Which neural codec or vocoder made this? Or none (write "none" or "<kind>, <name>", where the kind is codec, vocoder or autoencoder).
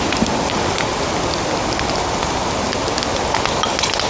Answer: none